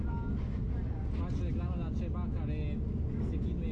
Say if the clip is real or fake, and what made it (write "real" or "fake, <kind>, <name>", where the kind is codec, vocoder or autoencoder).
real